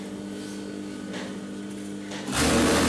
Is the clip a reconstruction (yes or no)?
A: no